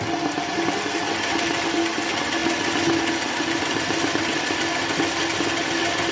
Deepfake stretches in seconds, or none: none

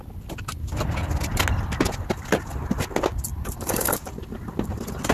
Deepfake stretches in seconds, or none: 3.3-4.2

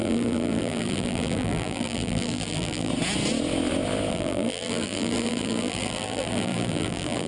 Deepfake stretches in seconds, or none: 0.0-2.9; 4.1-7.3

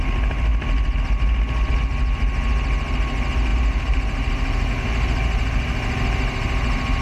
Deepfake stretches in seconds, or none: 3.5-4.7